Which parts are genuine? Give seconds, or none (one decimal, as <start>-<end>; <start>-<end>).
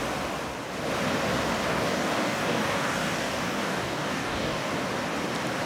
0.0-1.7; 4.7-5.7